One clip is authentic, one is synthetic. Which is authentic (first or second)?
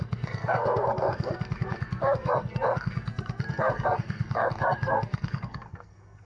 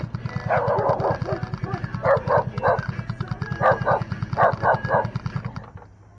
second